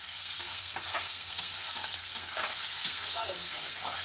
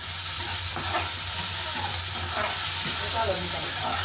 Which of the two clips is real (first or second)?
second